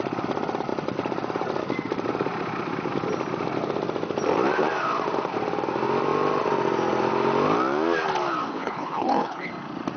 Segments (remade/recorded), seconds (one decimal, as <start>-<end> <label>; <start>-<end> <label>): 0.0-8.5 recorded; 8.5-9.5 remade; 9.5-10.0 recorded